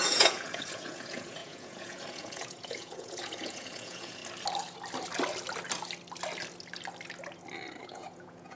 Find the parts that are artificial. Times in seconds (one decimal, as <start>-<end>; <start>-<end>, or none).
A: 0.0-4.2; 7.8-8.6